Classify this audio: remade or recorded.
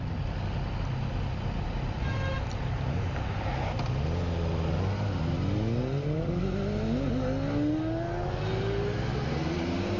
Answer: recorded